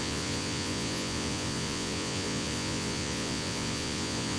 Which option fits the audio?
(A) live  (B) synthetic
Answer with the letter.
B